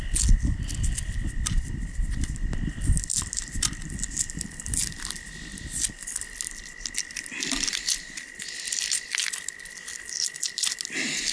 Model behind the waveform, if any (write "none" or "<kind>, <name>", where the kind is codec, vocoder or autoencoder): none